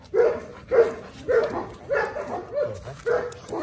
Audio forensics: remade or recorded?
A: recorded